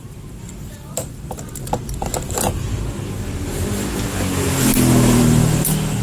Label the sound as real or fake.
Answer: real